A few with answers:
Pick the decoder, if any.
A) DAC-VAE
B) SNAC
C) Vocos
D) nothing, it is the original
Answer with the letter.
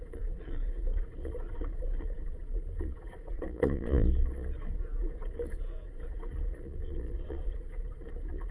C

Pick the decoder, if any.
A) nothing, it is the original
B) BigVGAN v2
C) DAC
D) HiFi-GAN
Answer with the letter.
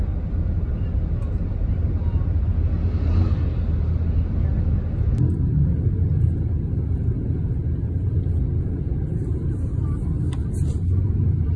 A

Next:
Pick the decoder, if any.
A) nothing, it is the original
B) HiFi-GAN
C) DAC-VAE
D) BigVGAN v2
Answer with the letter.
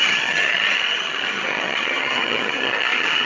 B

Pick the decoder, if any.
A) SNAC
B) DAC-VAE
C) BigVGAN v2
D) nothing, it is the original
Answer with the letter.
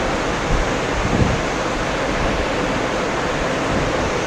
D